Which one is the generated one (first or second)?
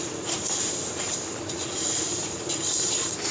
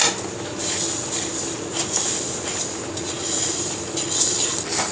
first